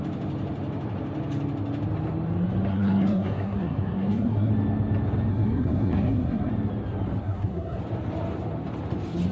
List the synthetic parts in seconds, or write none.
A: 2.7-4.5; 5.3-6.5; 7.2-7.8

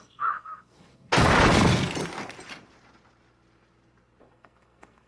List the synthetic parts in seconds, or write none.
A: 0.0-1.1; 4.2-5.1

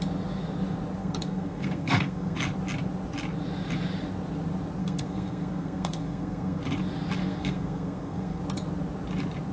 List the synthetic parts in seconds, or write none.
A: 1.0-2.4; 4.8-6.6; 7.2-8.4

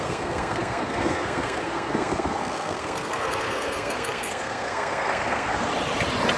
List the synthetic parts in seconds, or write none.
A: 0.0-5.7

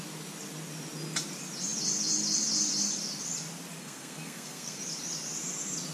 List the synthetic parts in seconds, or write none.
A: 3.8-4.8

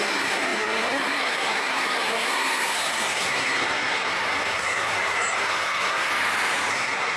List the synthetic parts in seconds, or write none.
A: 0.0-6.1; 6.7-7.2

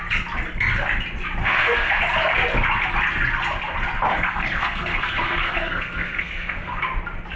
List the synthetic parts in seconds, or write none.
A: 1.4-2.0; 4.1-6.8

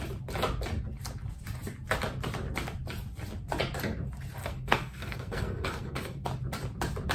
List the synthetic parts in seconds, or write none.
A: 4.4-6.3